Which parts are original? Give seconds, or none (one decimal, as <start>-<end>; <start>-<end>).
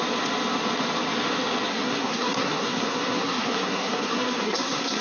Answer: 0.0-1.7